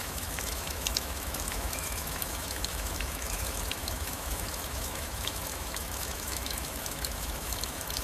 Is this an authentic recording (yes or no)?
no